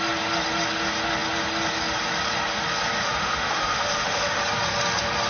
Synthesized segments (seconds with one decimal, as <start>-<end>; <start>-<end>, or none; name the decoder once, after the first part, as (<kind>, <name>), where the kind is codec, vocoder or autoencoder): 3.0-4.4 (autoencoder, DAC-VAE)